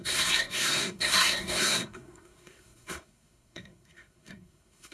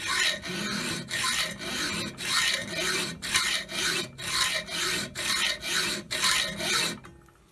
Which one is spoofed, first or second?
first